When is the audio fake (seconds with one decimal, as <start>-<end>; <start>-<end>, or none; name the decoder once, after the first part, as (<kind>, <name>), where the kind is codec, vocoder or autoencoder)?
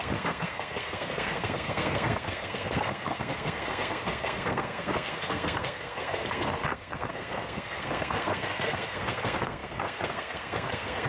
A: 0.0-11.1 (codec, SNAC)